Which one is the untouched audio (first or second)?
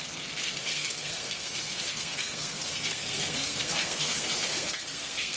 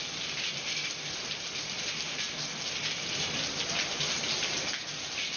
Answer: second